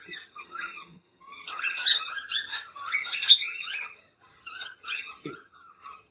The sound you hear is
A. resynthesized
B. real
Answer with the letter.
A